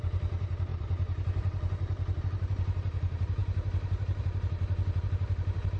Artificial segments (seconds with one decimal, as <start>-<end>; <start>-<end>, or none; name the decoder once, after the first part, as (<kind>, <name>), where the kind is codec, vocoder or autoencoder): 0.0-5.8 (vocoder, BigVGAN v2)